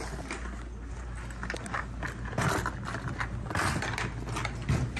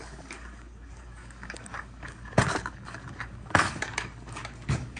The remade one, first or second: second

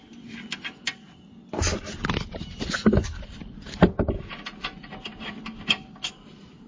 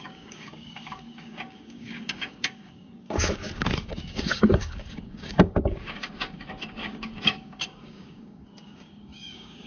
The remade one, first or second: second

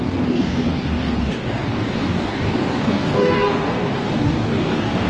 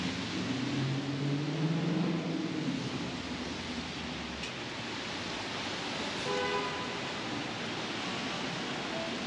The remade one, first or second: first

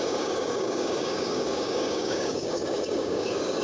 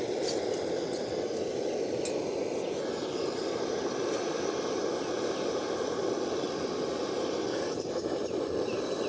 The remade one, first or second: first